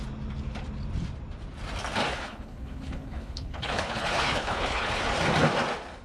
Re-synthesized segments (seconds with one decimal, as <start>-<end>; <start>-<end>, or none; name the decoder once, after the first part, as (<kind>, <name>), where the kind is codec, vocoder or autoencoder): 2.1-5.0 (codec, HILCodec)